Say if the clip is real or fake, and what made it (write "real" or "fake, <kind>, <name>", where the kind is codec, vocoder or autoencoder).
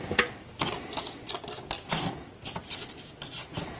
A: real